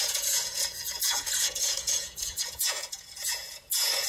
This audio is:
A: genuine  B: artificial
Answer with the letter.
B